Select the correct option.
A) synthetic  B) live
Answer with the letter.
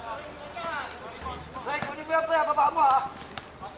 B